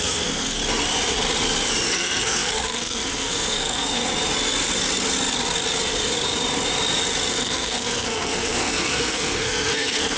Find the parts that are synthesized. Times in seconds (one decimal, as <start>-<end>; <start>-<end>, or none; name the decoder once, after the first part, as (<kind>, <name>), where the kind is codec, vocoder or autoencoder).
0.0-0.6 (codec, SNAC); 1.9-4.0; 7.3-10.2